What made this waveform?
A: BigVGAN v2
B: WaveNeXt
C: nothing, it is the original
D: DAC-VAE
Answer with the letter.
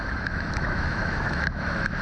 D